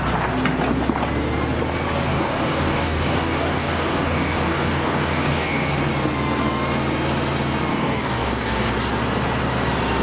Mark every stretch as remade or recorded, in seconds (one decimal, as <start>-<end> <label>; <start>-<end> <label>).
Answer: 0.0-2.1 recorded; 2.1-5.7 remade; 5.7-7.7 recorded; 7.7-8.7 remade; 8.7-10.0 recorded